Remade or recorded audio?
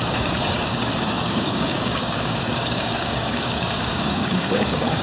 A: remade